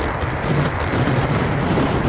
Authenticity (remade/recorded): recorded